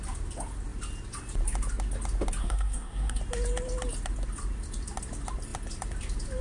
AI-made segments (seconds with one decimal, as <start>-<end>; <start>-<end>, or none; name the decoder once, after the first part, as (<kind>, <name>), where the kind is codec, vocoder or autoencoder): 2.4-3.2 (codec, SNAC)